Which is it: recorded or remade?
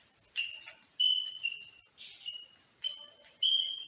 recorded